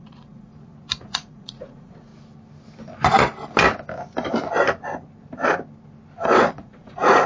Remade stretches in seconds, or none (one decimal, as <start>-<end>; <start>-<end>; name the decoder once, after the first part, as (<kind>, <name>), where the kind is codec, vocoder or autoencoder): 0.0-0.5 (vocoder, Vocos); 1.0-2.1; 6.5-7.3